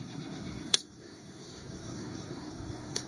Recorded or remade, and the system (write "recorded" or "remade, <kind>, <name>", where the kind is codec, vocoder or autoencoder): remade, codec, SNAC